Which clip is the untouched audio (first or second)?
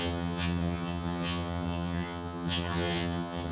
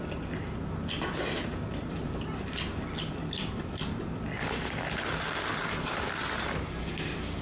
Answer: second